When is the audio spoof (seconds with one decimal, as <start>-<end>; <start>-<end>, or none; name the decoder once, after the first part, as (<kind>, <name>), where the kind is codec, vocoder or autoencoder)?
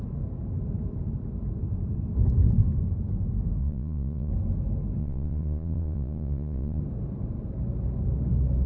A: 3.6-4.3 (vocoder, Vocos); 5.0-6.8